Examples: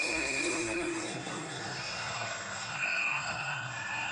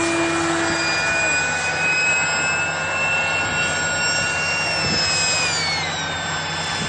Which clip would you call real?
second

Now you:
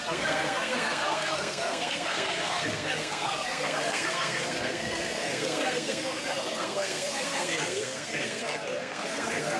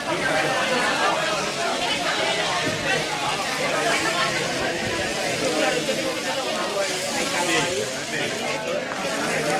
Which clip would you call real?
second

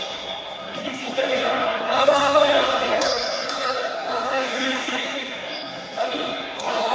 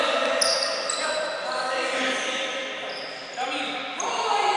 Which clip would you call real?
second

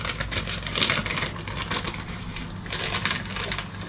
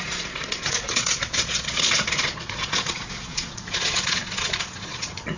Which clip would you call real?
first